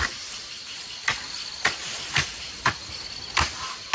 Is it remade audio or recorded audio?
recorded